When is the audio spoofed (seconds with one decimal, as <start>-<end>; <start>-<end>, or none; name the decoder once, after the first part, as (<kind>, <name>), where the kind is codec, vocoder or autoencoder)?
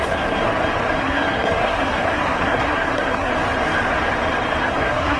0.0-0.5 (codec, SNAC); 1.0-3.3; 4.6-5.2